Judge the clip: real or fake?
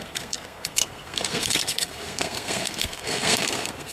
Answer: fake